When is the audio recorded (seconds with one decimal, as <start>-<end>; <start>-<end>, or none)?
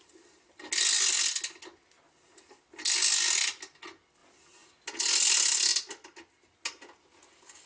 0.0-7.7